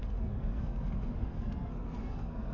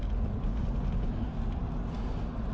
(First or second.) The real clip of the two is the second